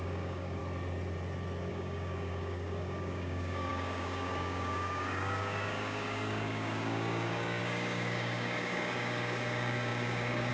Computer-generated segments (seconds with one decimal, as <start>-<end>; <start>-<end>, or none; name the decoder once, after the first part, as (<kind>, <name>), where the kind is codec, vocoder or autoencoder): 0.0-0.6 (codec, DAC); 1.7-10.5